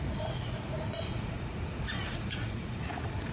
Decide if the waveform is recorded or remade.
remade